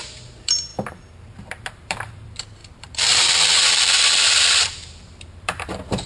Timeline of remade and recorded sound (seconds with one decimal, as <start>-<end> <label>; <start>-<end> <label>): 0.0-6.1 remade